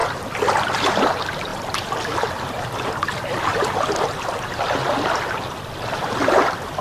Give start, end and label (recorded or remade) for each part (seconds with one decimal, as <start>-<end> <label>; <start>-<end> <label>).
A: 0.0-6.8 recorded